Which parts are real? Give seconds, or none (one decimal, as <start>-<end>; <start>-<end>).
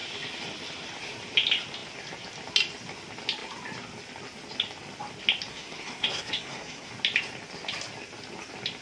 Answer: 0.0-5.5; 6.9-8.8